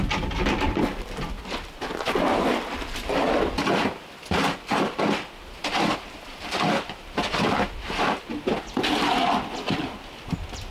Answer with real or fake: real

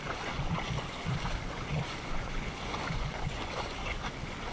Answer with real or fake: fake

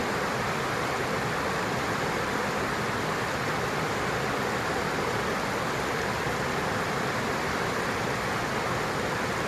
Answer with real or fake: real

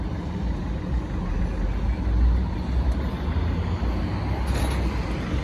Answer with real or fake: real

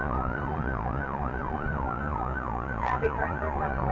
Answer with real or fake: fake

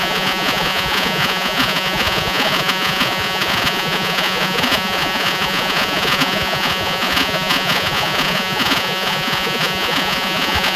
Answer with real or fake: fake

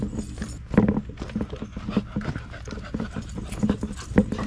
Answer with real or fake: real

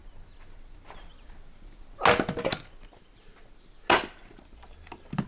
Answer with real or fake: real